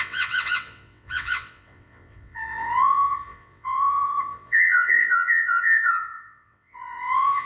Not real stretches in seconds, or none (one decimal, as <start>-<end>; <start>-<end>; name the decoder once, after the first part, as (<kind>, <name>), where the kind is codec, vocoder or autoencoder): 0.0-7.5 (vocoder, WaveNeXt)

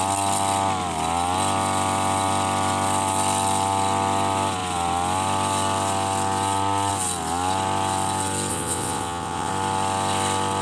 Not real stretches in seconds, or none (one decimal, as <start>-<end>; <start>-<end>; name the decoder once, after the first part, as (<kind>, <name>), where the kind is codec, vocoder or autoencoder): 8.5-9.5 (vocoder, WaveNeXt)